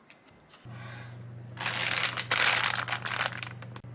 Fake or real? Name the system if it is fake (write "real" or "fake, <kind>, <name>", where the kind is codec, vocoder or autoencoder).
real